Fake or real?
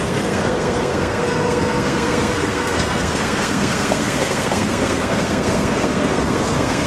fake